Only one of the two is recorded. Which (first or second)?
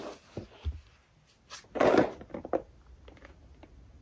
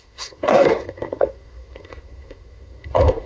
first